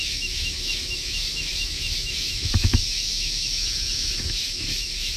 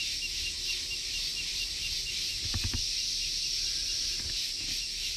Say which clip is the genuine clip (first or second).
second